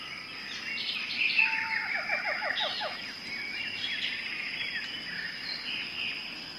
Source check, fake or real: real